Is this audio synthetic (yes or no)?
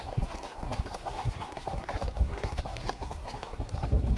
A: yes